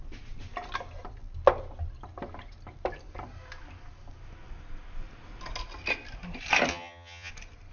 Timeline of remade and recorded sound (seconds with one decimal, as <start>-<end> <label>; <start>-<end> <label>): 0.0-6.7 recorded; 6.7-7.3 remade; 7.3-7.7 recorded